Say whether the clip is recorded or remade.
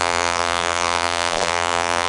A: remade